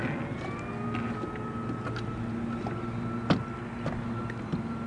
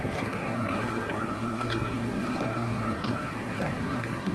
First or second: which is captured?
first